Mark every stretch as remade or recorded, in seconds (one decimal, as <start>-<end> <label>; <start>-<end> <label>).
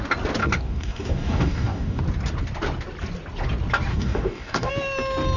0.0-0.4 recorded; 0.4-2.0 remade; 2.0-3.9 recorded; 3.9-4.7 remade; 4.7-5.4 recorded